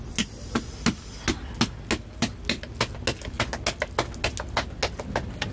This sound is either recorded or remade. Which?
recorded